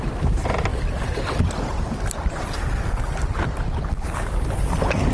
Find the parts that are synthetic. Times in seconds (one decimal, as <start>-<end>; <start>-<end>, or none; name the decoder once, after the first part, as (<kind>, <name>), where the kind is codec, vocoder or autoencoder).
none